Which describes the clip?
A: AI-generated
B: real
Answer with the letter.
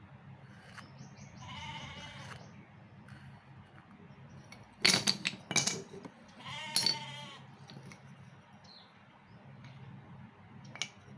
B